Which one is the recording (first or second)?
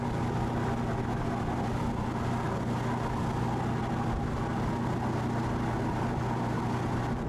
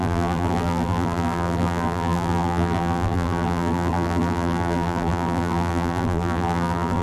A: first